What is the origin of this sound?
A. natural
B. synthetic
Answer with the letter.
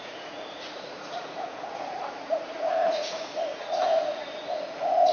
B